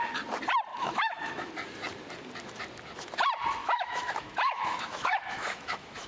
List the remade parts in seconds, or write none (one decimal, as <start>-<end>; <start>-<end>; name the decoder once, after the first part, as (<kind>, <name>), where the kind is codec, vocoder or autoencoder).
0.7-1.5 (autoencoder, DAC-VAE); 3.6-6.1